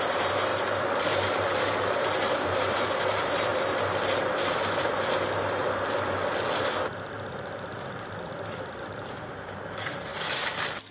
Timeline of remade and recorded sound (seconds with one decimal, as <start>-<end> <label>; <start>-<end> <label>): 0.0-3.5 remade; 3.5-7.3 recorded; 7.3-10.9 remade